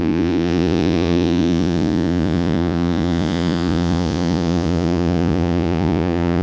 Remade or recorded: remade